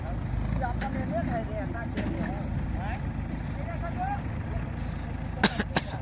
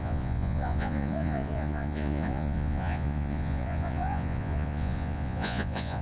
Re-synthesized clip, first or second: second